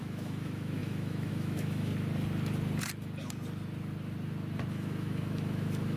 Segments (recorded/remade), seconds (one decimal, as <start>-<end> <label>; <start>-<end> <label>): 0.0-1.9 remade; 1.9-4.7 recorded; 4.7-6.0 remade